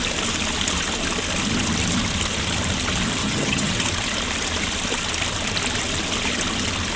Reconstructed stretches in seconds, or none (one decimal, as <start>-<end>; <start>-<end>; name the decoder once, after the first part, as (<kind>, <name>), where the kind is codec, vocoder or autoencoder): 3.2-3.7 (vocoder, HiFi-GAN)